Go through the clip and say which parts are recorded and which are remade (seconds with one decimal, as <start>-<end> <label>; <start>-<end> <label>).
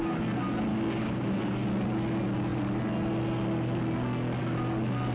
0.0-0.7 recorded; 0.7-1.4 remade; 1.4-5.1 recorded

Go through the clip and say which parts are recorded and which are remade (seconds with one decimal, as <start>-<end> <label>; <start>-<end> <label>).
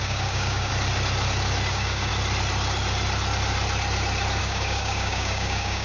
0.0-0.7 remade; 0.7-1.7 recorded; 1.7-2.1 remade; 2.1-4.4 recorded; 4.4-5.8 remade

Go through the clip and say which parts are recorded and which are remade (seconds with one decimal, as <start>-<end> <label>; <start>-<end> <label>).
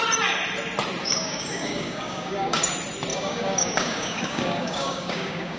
0.0-1.0 recorded; 1.0-2.7 remade; 2.7-3.1 recorded; 3.1-5.6 remade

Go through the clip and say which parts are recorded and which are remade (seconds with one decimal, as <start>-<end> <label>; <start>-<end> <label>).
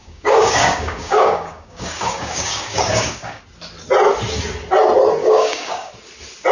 0.0-3.4 remade; 3.4-5.2 recorded; 5.2-5.9 remade; 5.9-6.5 recorded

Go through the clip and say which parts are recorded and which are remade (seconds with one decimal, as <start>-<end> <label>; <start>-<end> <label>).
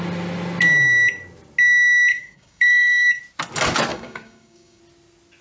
0.0-2.1 recorded; 2.1-3.2 remade; 3.2-3.9 recorded; 3.9-4.8 remade; 4.8-5.4 recorded